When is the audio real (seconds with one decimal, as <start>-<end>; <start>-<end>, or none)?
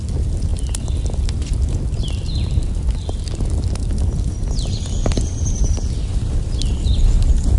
0.0-7.6